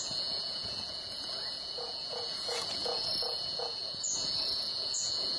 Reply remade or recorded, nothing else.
remade